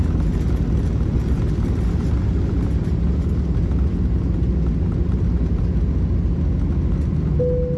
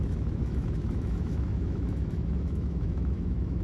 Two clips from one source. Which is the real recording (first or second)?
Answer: first